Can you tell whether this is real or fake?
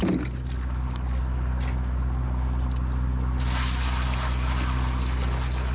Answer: real